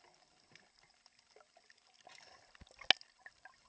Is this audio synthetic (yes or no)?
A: no